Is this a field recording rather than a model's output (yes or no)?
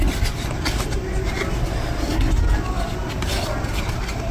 yes